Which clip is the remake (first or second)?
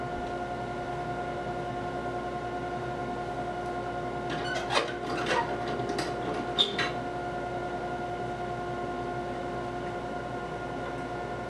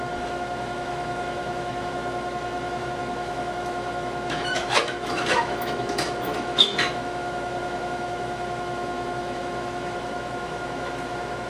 second